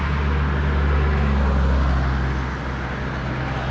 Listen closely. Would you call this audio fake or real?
real